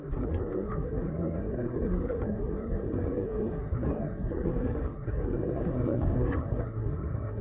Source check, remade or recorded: remade